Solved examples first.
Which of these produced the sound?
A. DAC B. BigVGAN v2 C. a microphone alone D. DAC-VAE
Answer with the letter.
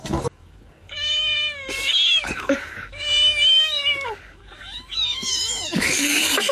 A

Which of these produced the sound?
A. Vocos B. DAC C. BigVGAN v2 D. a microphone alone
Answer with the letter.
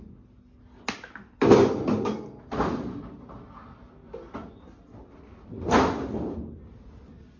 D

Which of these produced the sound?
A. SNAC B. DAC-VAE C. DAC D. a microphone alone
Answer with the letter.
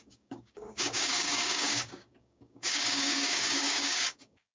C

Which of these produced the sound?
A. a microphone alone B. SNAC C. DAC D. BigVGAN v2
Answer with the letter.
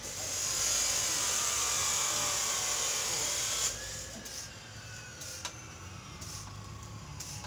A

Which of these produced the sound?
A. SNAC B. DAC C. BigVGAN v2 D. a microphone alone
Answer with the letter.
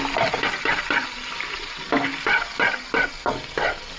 D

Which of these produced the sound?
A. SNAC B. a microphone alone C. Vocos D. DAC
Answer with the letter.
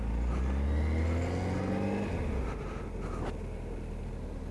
B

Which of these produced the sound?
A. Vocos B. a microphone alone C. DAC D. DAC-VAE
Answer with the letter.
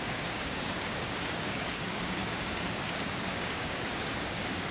C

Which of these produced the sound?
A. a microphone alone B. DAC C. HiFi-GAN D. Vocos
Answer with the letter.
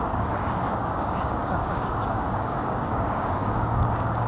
B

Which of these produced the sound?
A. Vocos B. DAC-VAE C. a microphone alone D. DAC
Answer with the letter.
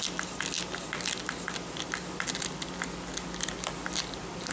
C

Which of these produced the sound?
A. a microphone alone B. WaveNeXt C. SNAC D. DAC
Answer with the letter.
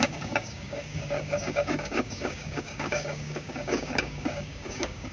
D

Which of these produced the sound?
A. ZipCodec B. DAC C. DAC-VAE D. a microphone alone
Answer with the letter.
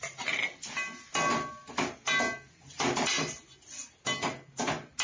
D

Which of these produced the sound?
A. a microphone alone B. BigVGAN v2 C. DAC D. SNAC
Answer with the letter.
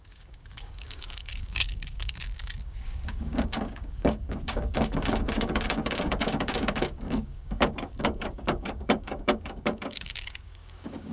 C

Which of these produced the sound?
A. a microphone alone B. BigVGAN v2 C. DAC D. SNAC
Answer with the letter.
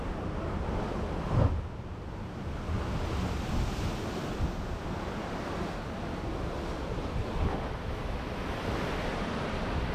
A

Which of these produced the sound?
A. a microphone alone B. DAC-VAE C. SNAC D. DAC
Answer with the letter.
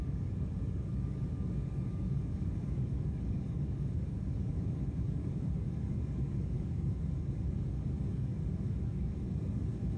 D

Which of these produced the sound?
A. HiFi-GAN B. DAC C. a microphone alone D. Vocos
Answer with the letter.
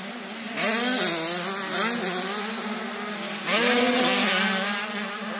C